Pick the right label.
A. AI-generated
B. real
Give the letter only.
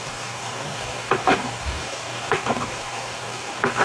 A